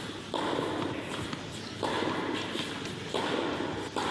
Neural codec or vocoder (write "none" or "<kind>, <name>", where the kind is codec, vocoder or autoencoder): none